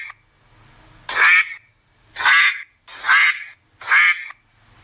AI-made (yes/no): no